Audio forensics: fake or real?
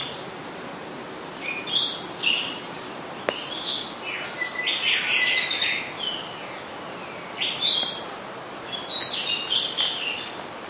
real